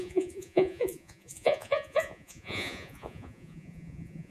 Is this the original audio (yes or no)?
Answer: no